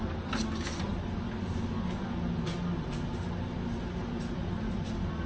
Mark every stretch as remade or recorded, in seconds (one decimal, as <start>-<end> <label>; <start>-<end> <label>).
0.0-5.3 recorded